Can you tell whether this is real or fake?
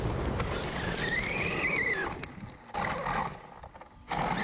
real